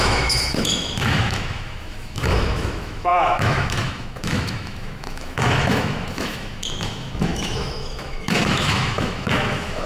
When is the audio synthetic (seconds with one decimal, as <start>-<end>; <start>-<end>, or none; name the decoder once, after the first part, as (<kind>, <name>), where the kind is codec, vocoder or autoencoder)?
0.0-9.9 (autoencoder, DAC-VAE)